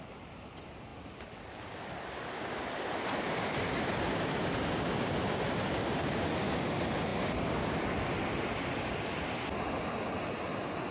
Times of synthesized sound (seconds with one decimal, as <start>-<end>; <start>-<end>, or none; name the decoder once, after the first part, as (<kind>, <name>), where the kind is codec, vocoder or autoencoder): none